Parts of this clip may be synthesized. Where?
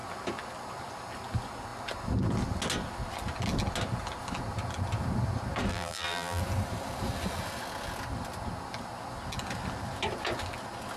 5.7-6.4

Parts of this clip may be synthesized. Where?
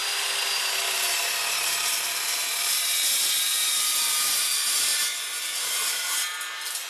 1.4-4.9; 5.6-6.9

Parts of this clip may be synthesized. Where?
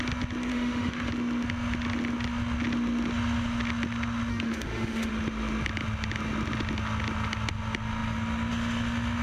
0.5-1.1; 4.3-5.1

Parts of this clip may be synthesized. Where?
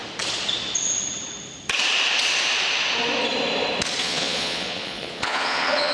4.0-5.9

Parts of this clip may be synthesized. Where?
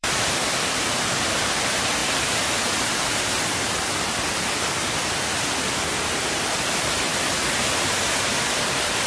0.0-2.0; 6.4-7.1; 8.6-9.1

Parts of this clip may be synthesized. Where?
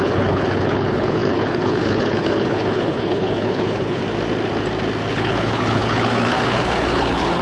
0.0-4.0; 5.1-7.4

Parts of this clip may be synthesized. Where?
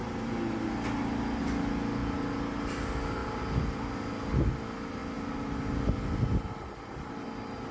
none